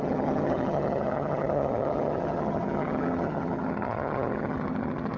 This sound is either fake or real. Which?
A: fake